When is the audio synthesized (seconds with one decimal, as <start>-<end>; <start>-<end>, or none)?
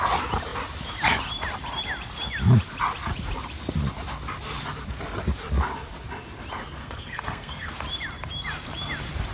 6.8-7.7